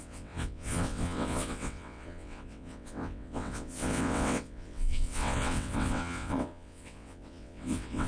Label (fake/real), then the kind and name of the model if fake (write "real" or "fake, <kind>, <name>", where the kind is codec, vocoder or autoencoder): fake, vocoder, WaveNeXt